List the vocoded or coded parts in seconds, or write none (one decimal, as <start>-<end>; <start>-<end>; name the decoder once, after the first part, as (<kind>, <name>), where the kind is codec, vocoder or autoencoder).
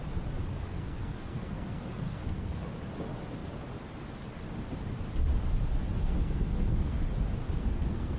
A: 0.4-2.7 (codec, SNAC); 6.0-7.0; 7.4-8.2